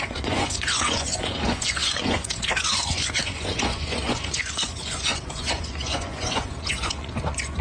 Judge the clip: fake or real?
fake